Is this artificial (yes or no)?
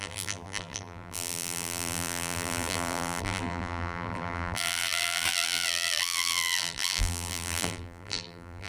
yes